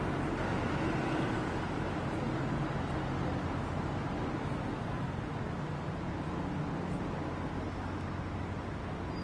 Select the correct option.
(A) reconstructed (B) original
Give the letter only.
B